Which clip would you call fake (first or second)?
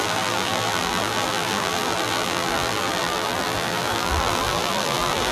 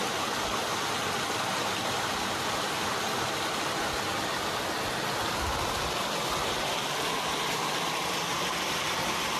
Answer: first